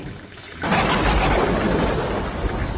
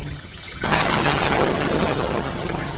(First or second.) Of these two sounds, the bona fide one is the first